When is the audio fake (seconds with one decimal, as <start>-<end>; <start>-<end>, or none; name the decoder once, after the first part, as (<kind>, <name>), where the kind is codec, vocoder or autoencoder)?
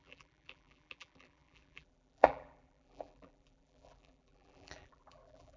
0.0-5.6 (vocoder, BigVGAN v2)